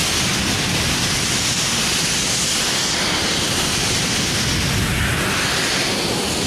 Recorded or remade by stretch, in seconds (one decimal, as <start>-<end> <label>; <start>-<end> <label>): 0.0-6.5 recorded